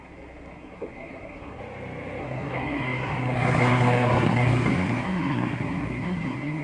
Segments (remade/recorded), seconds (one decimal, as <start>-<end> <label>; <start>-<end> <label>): 0.0-1.6 remade; 1.6-2.2 recorded; 2.2-6.6 remade